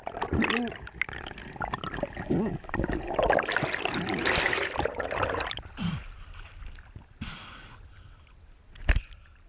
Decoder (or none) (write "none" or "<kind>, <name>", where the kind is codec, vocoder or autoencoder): none